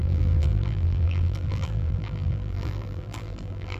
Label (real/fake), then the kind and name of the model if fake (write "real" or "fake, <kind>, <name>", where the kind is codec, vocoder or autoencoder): fake, vocoder, BigVGAN v2